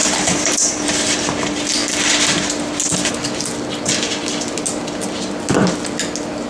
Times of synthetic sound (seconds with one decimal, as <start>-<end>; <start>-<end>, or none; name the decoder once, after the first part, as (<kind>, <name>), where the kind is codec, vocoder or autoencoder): 0.0-0.8 (vocoder, BigVGAN v2)